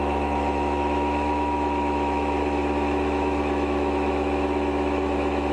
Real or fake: fake